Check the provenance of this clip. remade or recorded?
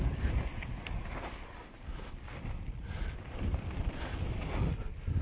remade